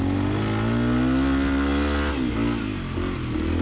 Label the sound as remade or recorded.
recorded